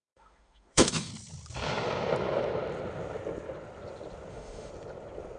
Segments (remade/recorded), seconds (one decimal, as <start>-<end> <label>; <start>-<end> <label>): 0.0-1.1 remade; 1.1-4.3 recorded; 4.3-4.7 remade; 4.7-5.4 recorded